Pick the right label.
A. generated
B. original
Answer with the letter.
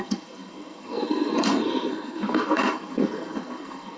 A